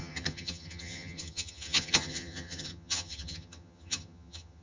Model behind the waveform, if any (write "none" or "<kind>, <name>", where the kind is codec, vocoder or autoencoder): vocoder, HiFi-GAN